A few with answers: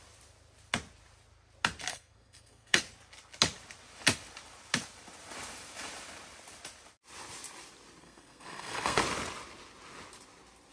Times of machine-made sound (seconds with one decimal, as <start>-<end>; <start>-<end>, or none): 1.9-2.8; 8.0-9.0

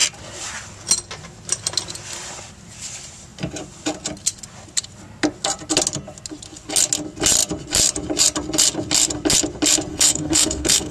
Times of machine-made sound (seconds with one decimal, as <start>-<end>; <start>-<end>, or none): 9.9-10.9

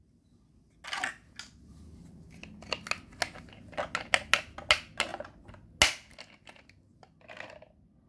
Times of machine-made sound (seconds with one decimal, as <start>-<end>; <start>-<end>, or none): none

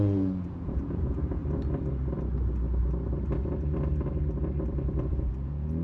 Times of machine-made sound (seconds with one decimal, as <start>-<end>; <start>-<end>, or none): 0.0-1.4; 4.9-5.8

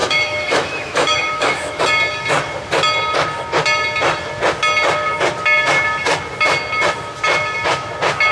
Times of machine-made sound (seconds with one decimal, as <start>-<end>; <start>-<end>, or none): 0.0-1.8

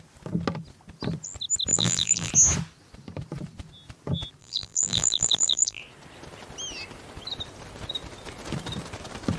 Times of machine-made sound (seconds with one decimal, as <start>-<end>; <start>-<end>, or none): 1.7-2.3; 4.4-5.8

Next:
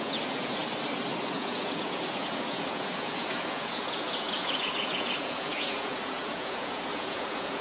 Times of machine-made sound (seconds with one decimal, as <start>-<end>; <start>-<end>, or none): 0.0-0.6; 1.2-7.6